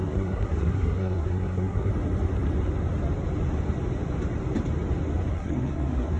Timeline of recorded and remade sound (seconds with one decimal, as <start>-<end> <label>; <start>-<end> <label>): 0.0-1.9 remade; 1.9-5.3 recorded; 5.3-6.2 remade